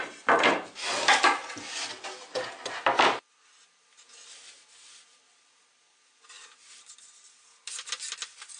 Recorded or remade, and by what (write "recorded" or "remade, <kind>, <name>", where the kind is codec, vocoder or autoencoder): recorded